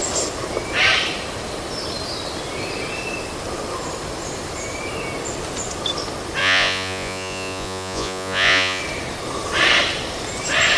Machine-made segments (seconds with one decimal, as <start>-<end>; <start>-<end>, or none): 6.4-8.8